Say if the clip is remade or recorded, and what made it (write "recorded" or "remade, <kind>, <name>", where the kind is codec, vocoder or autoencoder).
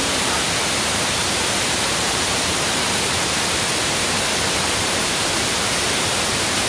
remade, vocoder, BigVGAN v2